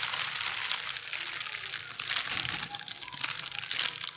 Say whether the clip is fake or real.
real